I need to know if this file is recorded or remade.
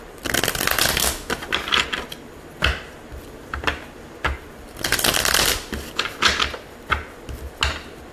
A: recorded